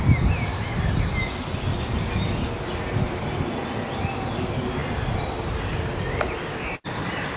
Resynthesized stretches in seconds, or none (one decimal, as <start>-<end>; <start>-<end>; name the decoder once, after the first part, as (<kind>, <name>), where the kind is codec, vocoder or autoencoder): 2.4-4.3 (vocoder, BigVGAN v2); 4.8-5.6